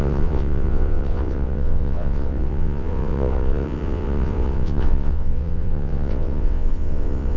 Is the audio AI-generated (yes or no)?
yes